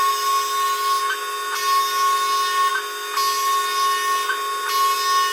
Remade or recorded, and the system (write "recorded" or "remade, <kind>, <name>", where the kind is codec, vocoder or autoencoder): recorded